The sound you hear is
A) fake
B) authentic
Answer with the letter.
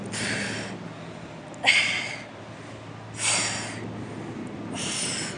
B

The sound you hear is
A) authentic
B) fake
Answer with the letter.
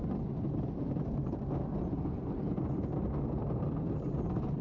A